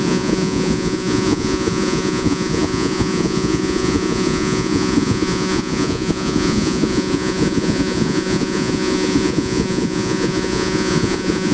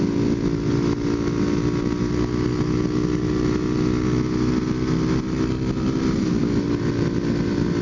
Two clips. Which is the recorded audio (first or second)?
second